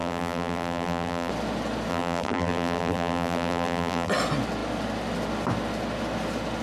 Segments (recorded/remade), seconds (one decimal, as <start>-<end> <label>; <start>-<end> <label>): 0.0-1.3 remade; 1.3-1.9 recorded; 1.9-4.1 remade; 4.1-6.6 recorded